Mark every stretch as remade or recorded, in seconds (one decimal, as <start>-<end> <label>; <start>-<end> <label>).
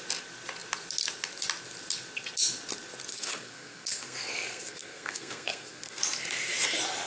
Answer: 0.0-3.1 recorded; 3.1-6.0 remade; 6.0-7.1 recorded